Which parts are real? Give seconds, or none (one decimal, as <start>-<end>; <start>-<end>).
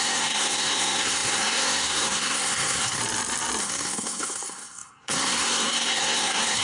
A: 3.0-3.6